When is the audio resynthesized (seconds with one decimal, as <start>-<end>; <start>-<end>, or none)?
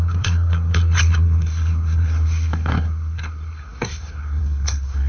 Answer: 0.0-5.1